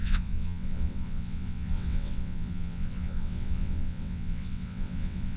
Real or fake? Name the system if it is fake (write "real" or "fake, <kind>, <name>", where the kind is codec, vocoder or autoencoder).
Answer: fake, vocoder, WaveNeXt